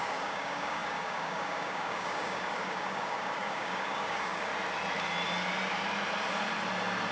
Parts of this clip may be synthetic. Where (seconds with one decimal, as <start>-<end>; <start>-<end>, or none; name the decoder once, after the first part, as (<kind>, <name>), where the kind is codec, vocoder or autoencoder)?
0.0-4.5 (codec, DAC)